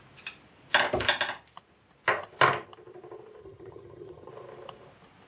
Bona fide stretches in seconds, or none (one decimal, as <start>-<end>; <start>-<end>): 0.0-3.4; 4.3-5.3